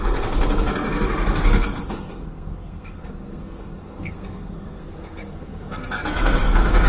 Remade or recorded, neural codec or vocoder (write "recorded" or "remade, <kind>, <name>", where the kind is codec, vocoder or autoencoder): remade, codec, SNAC